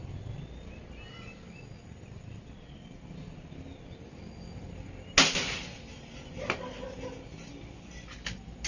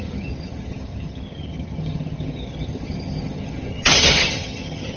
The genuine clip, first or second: first